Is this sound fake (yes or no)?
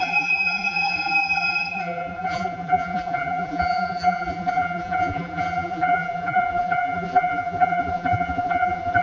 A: yes